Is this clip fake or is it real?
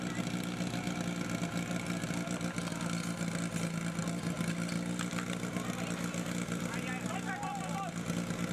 real